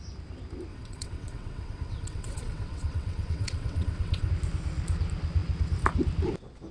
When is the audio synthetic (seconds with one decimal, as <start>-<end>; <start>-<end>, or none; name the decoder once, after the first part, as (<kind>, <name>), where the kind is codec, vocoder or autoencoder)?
0.7-4.3 (vocoder, WaveNeXt)